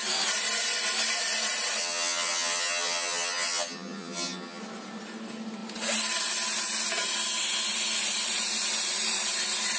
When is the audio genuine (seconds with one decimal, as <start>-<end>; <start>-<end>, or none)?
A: 0.0-1.8; 4.6-9.8